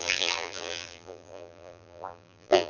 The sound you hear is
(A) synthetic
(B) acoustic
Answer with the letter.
A